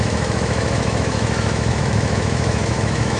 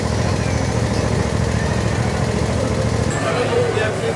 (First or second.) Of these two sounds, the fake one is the first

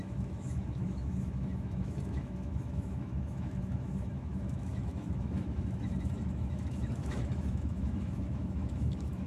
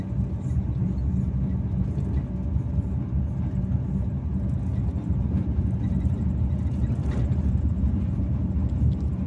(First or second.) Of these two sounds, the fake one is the first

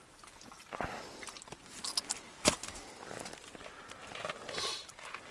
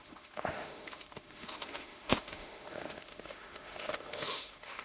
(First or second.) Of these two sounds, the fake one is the second